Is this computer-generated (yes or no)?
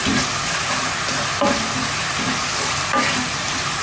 no